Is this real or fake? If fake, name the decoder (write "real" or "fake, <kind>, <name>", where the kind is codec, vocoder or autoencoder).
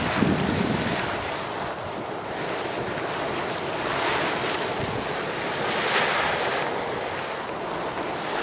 real